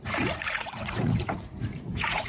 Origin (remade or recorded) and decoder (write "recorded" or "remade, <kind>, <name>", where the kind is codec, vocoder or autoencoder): remade, vocoder, Vocos